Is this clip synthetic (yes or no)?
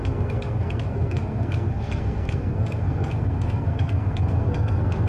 yes